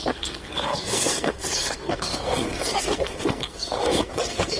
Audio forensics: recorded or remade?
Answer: remade